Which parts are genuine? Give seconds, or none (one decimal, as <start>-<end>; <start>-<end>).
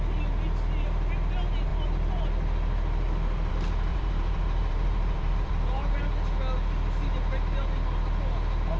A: 0.0-3.9; 6.0-8.8